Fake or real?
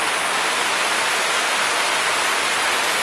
real